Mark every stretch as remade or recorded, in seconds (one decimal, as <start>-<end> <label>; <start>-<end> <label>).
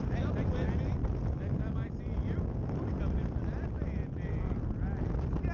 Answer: 0.0-5.5 recorded